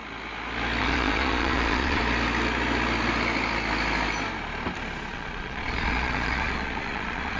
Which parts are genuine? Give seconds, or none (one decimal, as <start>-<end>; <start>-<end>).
0.0-0.8; 2.0-5.1